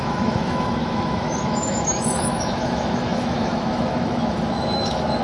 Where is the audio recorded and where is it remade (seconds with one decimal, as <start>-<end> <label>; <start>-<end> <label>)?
0.0-5.2 remade